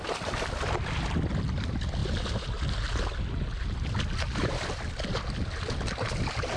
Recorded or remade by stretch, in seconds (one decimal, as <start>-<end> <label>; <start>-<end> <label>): 0.0-6.6 recorded